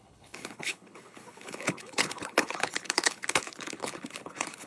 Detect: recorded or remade remade